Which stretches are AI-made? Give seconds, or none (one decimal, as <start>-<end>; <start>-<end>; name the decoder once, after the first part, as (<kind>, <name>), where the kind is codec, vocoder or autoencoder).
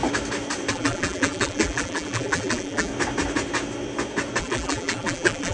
0.7-2.9 (vocoder, BigVGAN v2); 4.4-5.5